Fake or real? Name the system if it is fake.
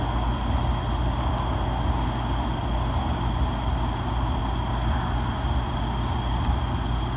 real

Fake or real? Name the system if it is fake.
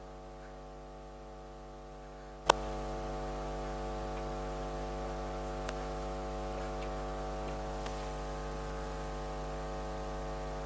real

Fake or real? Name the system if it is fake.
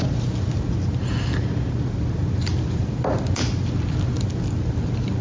real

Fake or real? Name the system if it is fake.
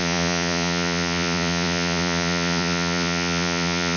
fake, vocoder, Vocos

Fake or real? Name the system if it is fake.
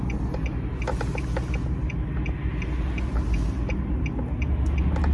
real